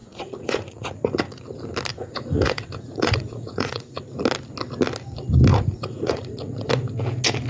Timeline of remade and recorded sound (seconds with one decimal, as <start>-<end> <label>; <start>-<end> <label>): 0.0-1.4 remade; 1.4-1.9 recorded; 1.9-4.0 remade; 4.0-5.5 recorded; 5.5-6.7 remade; 6.7-7.5 recorded